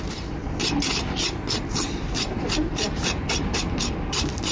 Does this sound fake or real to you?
fake